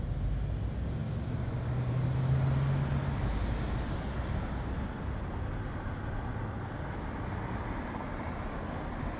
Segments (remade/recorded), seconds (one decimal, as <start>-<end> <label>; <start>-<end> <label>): 0.0-9.2 recorded